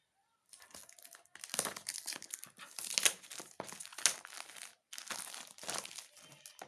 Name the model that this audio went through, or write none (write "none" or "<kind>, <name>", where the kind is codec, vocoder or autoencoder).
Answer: none